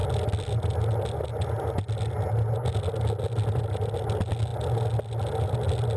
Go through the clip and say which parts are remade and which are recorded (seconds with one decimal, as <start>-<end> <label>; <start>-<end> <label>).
0.0-6.0 recorded